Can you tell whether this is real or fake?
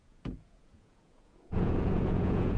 fake